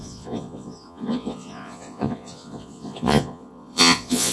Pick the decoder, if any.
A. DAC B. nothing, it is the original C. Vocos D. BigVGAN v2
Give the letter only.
C